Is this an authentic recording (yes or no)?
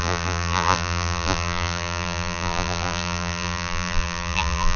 no